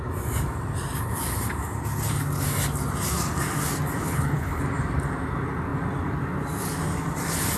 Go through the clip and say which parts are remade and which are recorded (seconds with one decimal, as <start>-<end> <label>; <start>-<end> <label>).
0.0-4.0 recorded; 4.0-4.6 remade; 4.6-7.6 recorded